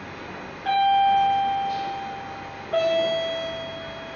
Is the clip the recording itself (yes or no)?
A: yes